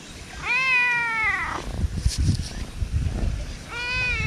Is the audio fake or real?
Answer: real